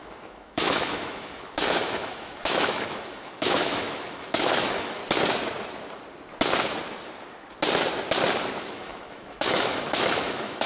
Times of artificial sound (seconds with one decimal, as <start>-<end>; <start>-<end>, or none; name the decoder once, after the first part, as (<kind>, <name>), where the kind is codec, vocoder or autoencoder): 0.0-5.0 (autoencoder, DAC-VAE); 8.6-10.7